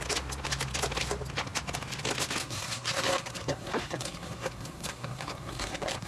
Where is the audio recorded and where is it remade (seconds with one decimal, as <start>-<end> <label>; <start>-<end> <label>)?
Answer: 0.0-2.4 recorded; 2.4-6.1 remade